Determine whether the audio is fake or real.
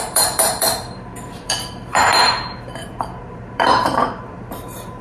fake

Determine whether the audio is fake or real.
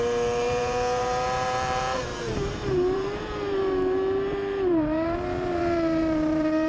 fake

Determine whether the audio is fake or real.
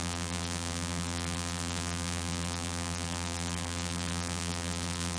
fake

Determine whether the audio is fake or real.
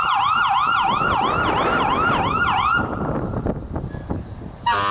real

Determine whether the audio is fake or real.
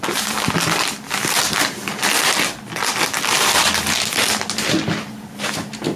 real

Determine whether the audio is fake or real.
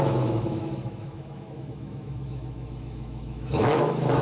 fake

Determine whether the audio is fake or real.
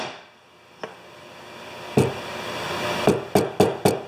real